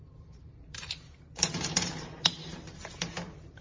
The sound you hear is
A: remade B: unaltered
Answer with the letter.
A